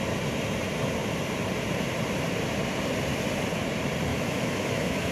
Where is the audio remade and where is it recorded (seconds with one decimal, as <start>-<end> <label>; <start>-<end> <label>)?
0.0-4.1 recorded; 4.1-5.1 remade